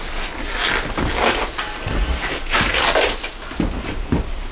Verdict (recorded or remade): recorded